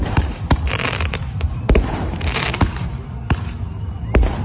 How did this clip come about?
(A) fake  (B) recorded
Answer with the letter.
A